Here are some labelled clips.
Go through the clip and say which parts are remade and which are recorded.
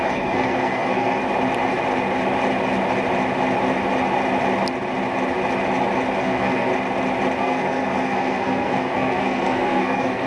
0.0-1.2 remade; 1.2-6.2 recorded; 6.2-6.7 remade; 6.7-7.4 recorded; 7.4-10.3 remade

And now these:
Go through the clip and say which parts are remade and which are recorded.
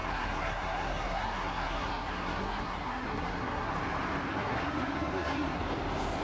0.0-3.7 remade; 3.7-4.3 recorded; 4.3-5.6 remade; 5.6-6.2 recorded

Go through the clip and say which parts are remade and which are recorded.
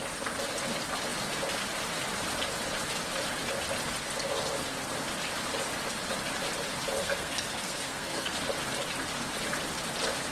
0.0-7.0 recorded; 7.0-8.4 remade; 8.4-10.3 recorded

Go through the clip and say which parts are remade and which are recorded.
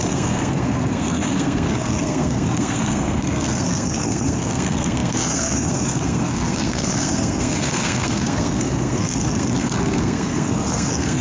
0.0-11.2 remade